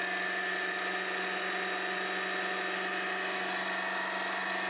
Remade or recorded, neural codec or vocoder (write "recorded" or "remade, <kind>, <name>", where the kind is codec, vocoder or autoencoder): recorded